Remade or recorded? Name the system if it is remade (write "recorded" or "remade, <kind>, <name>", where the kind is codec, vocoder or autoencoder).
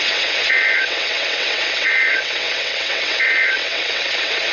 remade, vocoder, WaveNeXt